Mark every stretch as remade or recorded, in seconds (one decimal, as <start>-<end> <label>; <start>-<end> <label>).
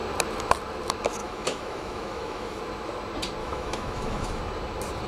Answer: 0.0-1.2 recorded; 1.2-2.6 remade; 2.6-3.4 recorded; 3.4-4.4 remade; 4.4-5.1 recorded